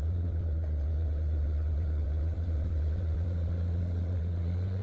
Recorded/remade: remade